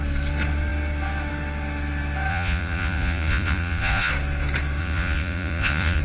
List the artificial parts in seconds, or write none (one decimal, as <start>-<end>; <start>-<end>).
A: 2.3-4.1; 4.8-6.0